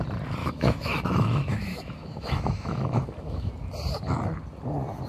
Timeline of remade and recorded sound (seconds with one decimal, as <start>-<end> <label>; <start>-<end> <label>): 0.0-0.4 recorded; 0.4-3.5 remade; 3.5-5.1 recorded